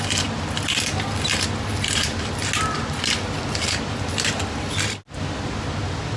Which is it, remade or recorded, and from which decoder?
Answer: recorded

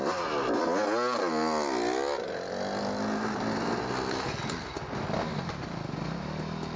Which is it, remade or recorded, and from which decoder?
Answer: recorded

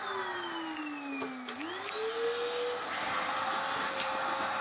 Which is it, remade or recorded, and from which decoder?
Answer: recorded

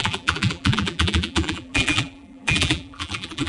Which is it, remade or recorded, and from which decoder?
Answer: remade, vocoder, BigVGAN v2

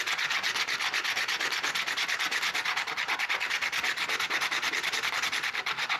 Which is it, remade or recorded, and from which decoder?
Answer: recorded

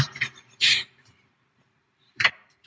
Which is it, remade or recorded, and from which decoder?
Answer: remade, vocoder, BigVGAN v2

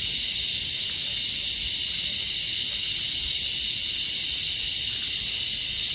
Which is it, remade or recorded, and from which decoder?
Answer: recorded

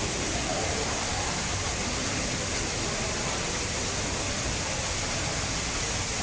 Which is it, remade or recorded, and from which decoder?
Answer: recorded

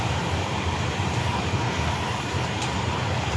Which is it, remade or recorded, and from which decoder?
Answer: remade, vocoder, BigVGAN v2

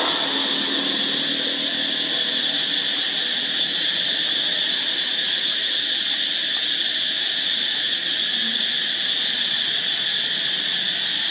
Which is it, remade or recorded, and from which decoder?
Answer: recorded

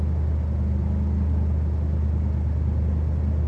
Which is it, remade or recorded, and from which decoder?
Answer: recorded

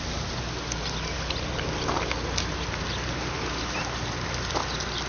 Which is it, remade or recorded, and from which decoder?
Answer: recorded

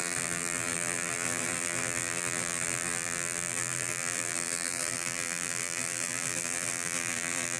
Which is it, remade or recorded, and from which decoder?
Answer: remade, vocoder, BigVGAN v2